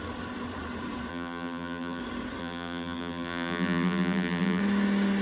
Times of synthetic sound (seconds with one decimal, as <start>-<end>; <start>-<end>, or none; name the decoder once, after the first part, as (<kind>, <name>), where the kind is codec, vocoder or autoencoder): 1.1-2.0 (vocoder, BigVGAN v2); 2.4-4.6